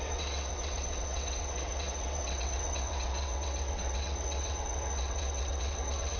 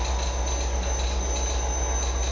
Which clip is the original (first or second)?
second